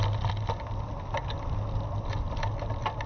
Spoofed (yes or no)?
no